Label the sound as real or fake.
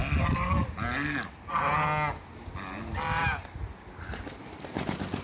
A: real